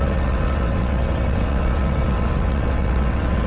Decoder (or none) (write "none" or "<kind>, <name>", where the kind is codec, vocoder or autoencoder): vocoder, WaveNeXt